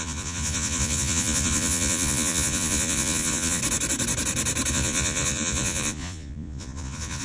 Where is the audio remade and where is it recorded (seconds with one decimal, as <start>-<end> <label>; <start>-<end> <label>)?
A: 0.0-3.6 remade; 3.6-4.7 recorded; 4.7-7.2 remade